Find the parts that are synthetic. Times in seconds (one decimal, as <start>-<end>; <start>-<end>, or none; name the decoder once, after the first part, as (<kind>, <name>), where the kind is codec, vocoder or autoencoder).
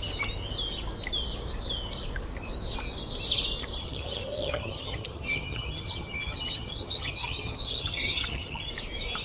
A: 3.8-8.7 (vocoder, HiFi-GAN)